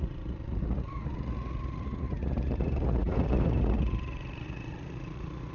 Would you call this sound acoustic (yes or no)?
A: no